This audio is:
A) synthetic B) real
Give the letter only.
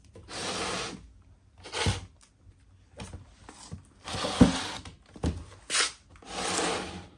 B